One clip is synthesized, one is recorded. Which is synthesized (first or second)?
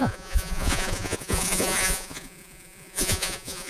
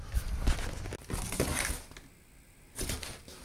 first